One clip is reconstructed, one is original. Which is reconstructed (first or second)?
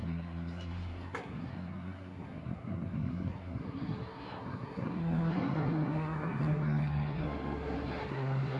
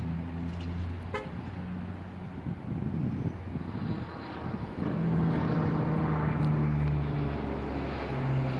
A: first